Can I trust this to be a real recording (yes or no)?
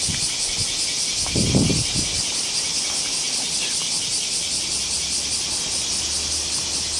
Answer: yes